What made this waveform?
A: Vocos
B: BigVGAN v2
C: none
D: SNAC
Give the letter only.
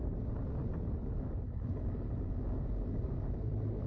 C